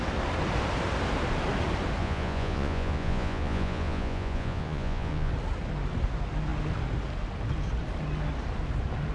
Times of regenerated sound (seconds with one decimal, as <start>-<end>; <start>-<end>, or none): 2.0-5.3